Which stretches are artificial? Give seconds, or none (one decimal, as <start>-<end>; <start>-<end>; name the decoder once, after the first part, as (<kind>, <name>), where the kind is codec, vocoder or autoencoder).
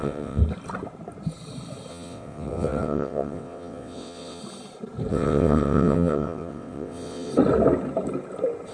0.0-0.4 (vocoder, WaveNeXt); 1.9-4.4; 5.1-7.3